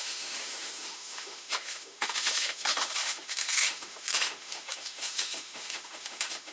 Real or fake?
fake